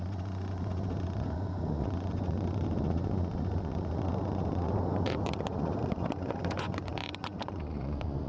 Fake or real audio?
fake